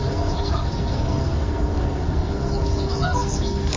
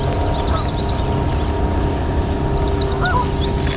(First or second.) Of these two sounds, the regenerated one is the first